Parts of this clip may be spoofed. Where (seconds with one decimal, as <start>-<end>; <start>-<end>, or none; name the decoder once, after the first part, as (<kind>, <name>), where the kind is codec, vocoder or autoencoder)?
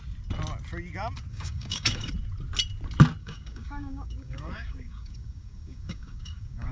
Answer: 1.3-2.1 (codec, DAC); 3.2-6.7